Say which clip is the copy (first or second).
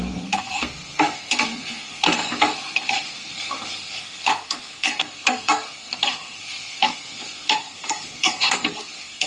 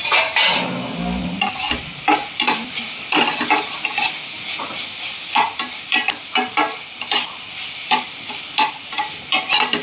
first